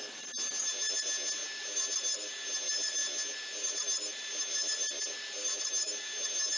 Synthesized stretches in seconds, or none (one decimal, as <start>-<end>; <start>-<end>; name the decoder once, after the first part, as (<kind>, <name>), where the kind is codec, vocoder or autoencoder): none